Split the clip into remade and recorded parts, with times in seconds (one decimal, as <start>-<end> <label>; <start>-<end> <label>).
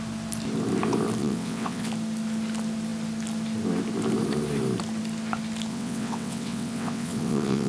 0.0-1.2 recorded; 1.2-1.9 remade; 1.9-5.7 recorded; 5.7-7.7 remade